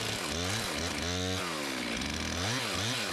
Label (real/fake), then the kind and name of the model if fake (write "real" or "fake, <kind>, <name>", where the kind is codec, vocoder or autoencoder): real